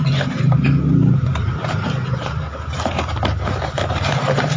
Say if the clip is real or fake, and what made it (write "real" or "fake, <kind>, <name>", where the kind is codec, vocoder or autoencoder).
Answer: fake, vocoder, BigVGAN v2